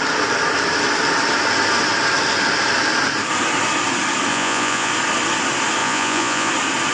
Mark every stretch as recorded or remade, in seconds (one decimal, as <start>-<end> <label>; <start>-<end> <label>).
0.0-4.3 recorded; 4.3-4.9 remade; 4.9-5.8 recorded; 5.8-6.5 remade; 6.5-6.9 recorded

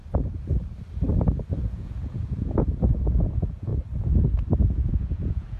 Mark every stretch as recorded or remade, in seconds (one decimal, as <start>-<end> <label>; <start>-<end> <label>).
0.0-1.6 recorded; 1.6-3.7 remade; 3.7-4.9 recorded; 4.9-5.6 remade

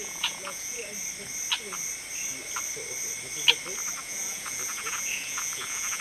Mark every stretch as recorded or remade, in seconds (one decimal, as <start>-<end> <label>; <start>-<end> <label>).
0.0-0.8 remade; 0.8-4.0 recorded; 4.0-6.0 remade

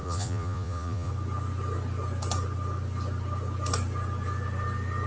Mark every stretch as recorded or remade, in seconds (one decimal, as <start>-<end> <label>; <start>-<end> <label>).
0.0-1.1 remade; 1.1-5.1 recorded

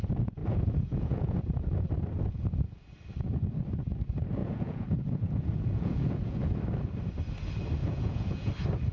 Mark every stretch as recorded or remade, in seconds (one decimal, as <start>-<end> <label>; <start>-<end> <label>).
0.0-0.4 recorded; 0.4-1.4 remade; 1.4-4.4 recorded; 4.4-6.6 remade; 6.6-7.8 recorded; 7.8-8.5 remade; 8.5-8.9 recorded

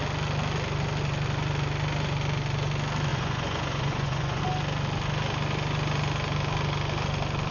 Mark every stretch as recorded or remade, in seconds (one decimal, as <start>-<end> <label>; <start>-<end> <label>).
0.0-3.1 recorded; 3.1-4.4 remade; 4.4-7.5 recorded